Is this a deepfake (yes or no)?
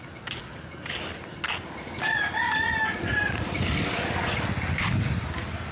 no